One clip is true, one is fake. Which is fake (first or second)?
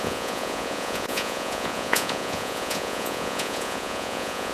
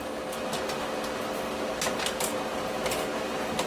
first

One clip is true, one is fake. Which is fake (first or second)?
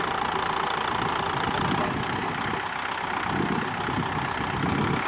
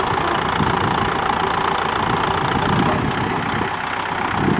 first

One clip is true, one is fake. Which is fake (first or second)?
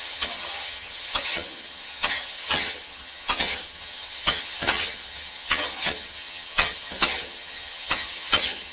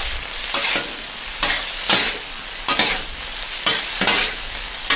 first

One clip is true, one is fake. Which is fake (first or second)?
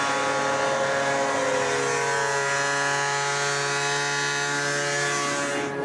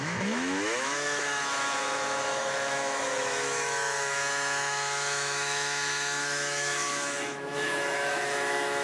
second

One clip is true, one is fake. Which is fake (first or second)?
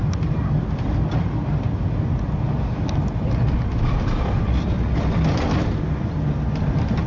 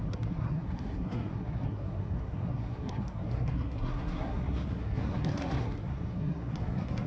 second